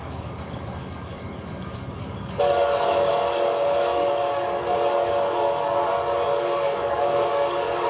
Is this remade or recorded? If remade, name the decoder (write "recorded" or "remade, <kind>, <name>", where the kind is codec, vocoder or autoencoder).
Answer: remade, codec, DAC